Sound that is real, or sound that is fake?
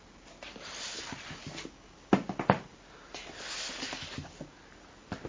real